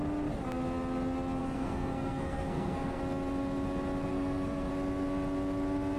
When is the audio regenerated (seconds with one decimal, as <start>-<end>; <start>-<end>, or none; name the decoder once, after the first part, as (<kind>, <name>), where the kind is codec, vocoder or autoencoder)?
1.4-3.0 (codec, SNAC); 4.1-4.7